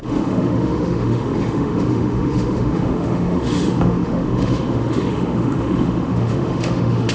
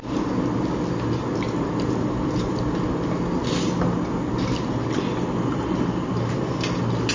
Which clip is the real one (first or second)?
second